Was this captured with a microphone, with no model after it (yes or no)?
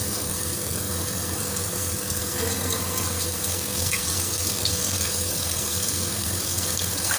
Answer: no